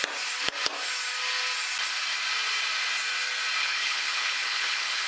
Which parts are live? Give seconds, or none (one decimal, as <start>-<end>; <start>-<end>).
0.0-3.6